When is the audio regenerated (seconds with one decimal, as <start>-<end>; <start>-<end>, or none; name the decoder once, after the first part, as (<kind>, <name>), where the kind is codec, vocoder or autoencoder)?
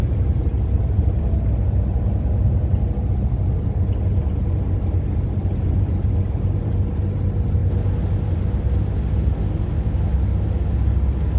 none